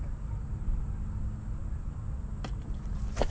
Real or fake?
real